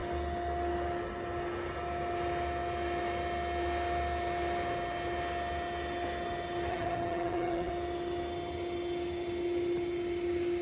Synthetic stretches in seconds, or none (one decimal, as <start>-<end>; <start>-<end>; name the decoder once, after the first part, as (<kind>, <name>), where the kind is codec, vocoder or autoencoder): 6.7-7.7 (vocoder, HiFi-GAN)